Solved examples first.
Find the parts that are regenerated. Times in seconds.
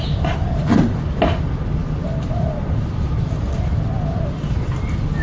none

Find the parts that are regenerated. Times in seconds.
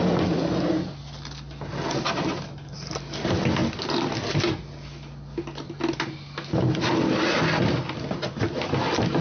none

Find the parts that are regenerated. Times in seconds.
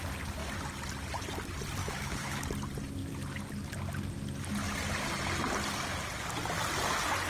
1.8-2.4 (autoencoder, DAC-VAE)